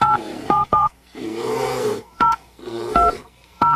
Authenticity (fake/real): fake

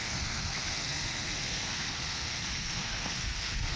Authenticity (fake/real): fake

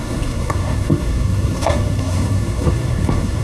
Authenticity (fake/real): fake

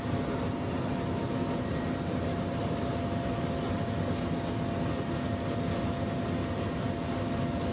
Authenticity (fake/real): real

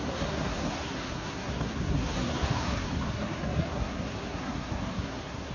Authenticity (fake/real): fake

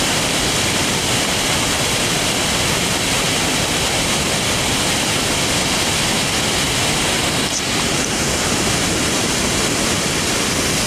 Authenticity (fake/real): real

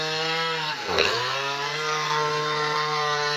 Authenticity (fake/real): fake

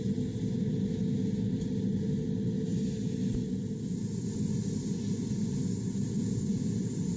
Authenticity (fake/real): real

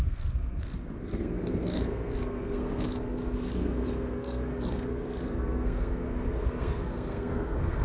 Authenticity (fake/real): fake